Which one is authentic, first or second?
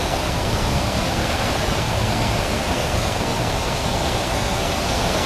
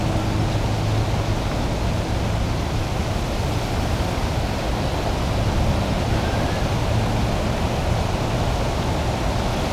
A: second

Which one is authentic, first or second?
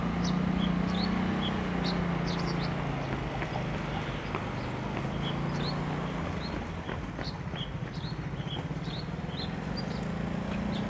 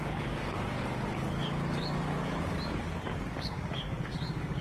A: first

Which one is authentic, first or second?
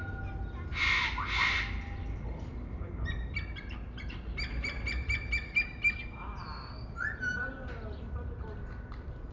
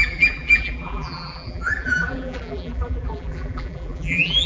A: first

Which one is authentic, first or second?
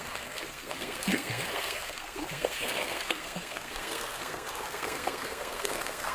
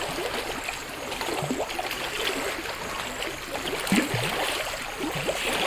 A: second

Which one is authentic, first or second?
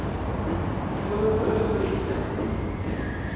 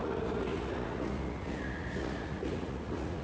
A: first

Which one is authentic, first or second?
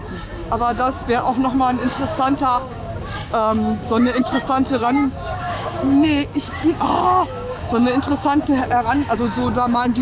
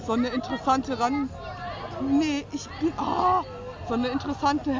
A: second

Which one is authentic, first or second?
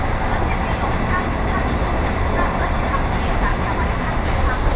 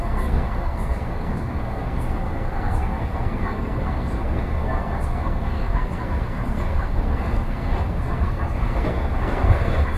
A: first